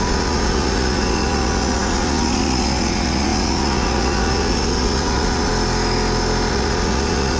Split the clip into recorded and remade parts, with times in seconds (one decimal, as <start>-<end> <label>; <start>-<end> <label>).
0.0-5.5 remade; 5.5-6.5 recorded; 6.5-7.4 remade